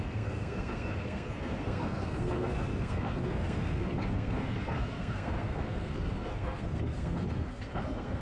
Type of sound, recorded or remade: remade